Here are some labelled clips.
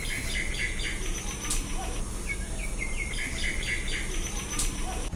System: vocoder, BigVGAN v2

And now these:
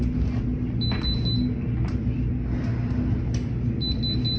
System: none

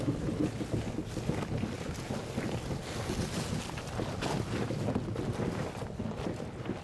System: none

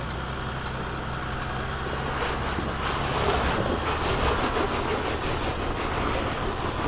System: none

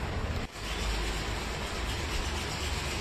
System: none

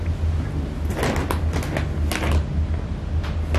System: none